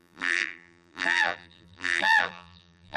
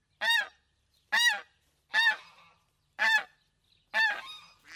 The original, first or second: second